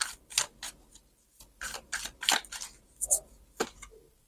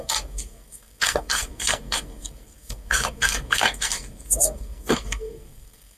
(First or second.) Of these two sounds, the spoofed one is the second